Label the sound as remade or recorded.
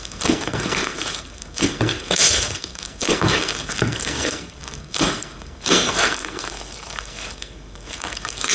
remade